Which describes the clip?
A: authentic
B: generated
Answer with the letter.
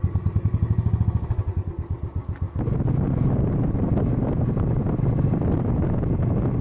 A